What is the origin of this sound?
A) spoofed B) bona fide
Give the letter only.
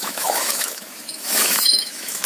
A